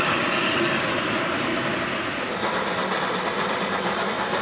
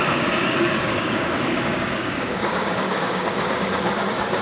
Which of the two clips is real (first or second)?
first